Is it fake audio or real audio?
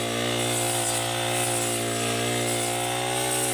real